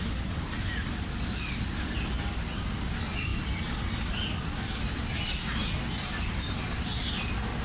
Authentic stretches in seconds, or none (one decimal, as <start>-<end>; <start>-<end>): 0.0-7.6